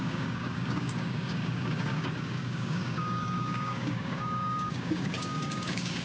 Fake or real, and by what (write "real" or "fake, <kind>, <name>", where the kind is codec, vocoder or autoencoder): fake, codec, DAC